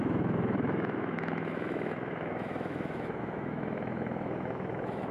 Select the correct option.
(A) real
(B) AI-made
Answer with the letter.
B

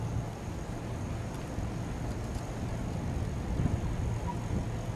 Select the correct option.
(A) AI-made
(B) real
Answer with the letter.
B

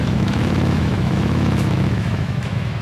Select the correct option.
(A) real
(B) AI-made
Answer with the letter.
B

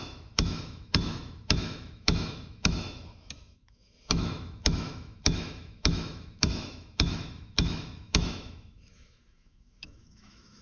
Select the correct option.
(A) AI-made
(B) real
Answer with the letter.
A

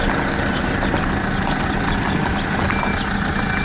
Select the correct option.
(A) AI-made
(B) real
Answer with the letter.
B